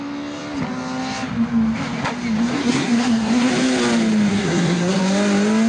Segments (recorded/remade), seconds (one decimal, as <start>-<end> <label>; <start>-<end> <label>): 0.0-2.5 recorded; 2.5-3.5 remade; 3.5-4.3 recorded; 4.3-5.0 remade; 5.0-5.7 recorded